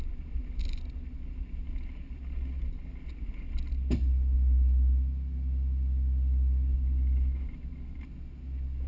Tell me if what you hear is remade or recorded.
recorded